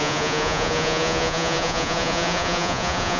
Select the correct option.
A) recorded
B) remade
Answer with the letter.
B